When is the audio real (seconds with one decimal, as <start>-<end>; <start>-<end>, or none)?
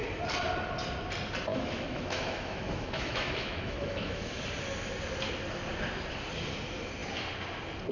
0.0-1.5; 4.4-7.9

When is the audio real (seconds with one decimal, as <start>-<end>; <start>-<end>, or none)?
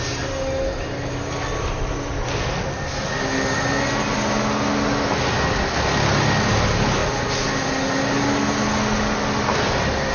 0.0-10.1